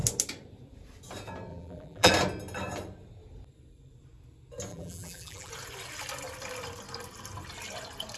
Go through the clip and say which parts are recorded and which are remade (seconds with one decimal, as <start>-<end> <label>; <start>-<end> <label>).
0.0-1.5 recorded; 1.5-2.1 remade; 2.1-4.7 recorded; 4.7-5.5 remade; 5.5-8.2 recorded